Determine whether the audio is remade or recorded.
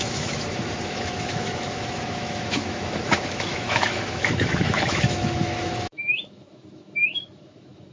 remade